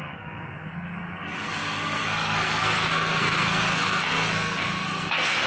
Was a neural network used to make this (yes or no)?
yes